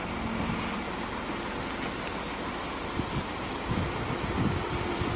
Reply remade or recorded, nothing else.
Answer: recorded